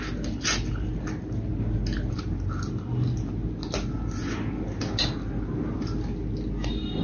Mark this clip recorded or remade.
recorded